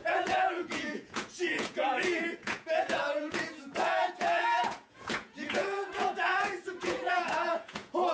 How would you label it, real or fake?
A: fake